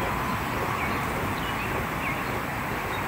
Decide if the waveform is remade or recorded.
recorded